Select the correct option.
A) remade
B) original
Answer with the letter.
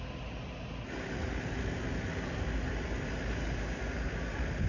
B